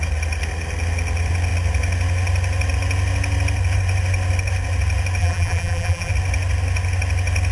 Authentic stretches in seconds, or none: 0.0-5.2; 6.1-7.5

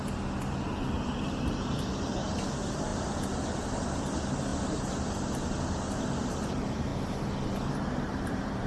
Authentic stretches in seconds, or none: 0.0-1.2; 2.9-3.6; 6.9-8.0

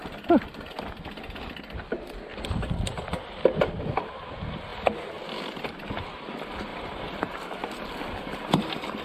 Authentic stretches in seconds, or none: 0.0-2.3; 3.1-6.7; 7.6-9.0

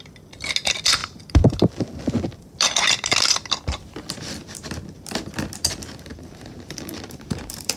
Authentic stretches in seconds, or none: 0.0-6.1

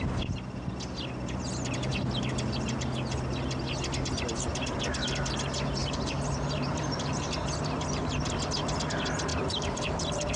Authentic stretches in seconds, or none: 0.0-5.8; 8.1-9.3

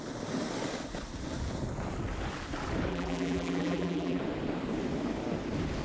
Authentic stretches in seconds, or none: 0.0-2.9; 4.2-5.8

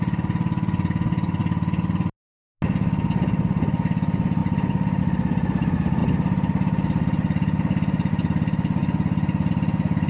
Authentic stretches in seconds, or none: 0.0-10.1

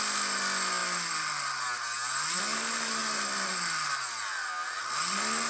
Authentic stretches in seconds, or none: 0.0-5.5